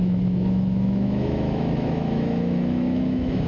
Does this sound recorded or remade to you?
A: remade